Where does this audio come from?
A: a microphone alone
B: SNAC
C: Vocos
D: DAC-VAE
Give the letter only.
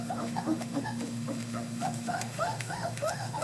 D